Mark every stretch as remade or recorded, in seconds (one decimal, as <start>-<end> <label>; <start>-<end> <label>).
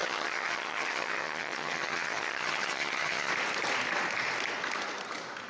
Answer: 0.0-3.3 remade; 3.3-5.5 recorded